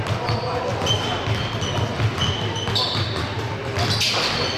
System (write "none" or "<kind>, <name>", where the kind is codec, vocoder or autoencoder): none